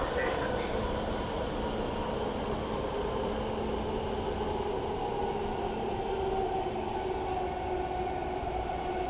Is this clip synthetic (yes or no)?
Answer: no